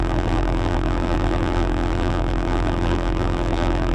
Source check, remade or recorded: remade